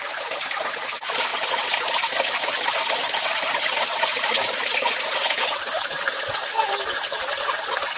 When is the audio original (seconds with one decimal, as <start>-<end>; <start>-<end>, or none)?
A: 0.0-8.0